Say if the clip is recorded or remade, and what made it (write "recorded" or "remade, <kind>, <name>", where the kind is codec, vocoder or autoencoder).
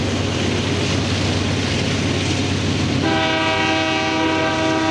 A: recorded